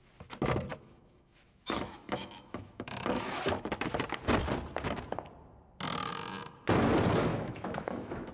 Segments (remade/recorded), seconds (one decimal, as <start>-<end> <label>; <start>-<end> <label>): 0.0-0.7 recorded; 0.7-3.4 remade; 3.4-7.3 recorded; 7.3-8.3 remade